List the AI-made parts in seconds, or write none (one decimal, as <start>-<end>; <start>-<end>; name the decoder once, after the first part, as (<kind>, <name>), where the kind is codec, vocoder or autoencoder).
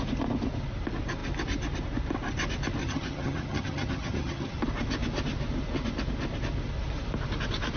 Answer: 2.8-4.6 (vocoder, HiFi-GAN)